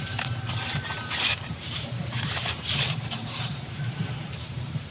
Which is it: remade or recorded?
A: remade